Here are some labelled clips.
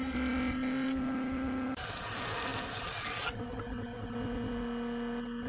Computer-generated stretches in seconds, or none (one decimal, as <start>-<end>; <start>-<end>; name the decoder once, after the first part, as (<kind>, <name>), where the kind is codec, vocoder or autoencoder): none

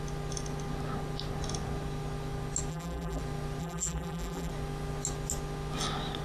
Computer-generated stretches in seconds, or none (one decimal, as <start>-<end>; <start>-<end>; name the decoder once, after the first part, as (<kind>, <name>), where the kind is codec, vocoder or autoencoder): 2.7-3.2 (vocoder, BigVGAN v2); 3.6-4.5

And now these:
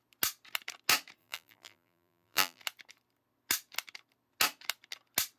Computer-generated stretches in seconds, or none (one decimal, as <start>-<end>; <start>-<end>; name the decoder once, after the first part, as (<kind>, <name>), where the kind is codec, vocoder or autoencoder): 1.2-2.6 (vocoder, BigVGAN v2)